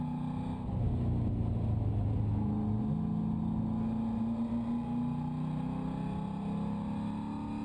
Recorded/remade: recorded